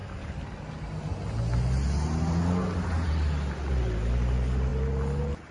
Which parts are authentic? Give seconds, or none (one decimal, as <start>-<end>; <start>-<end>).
0.0-5.5